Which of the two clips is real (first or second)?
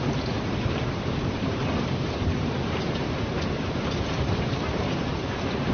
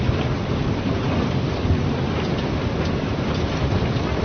second